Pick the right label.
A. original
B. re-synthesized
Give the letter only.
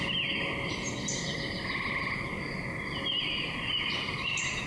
A